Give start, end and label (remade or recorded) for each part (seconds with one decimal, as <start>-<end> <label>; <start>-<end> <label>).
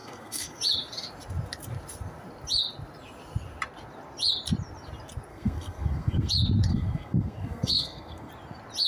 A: 0.0-0.6 remade; 0.6-5.3 recorded; 5.3-6.3 remade; 6.3-6.7 recorded; 6.7-8.3 remade; 8.3-8.9 recorded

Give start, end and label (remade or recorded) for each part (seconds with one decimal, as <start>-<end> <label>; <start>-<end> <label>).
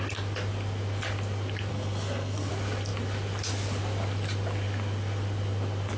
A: 0.0-1.7 recorded; 1.7-2.5 remade; 2.5-6.0 recorded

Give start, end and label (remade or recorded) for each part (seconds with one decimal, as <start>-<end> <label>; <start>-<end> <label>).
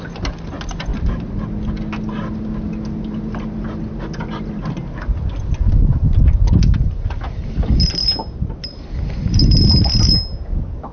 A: 0.0-10.9 recorded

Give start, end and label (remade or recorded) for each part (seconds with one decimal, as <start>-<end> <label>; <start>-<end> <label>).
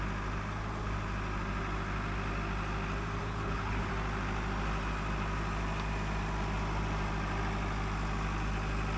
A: 0.0-3.2 recorded; 3.2-3.9 remade; 3.9-9.0 recorded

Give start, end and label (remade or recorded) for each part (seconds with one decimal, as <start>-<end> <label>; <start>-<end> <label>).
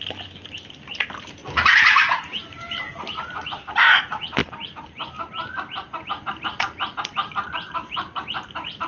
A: 0.0-1.4 recorded; 1.4-4.0 remade; 4.0-4.4 recorded; 4.4-6.1 remade; 6.1-8.9 recorded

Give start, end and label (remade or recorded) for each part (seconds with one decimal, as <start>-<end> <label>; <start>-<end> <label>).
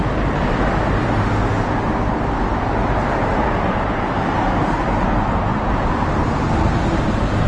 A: 0.0-3.2 recorded; 3.2-3.7 remade; 3.7-5.5 recorded; 5.5-7.1 remade; 7.1-7.5 recorded